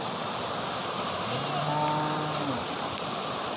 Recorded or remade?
recorded